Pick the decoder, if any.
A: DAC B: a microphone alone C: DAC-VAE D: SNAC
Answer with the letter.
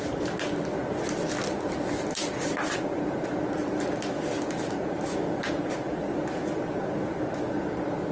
B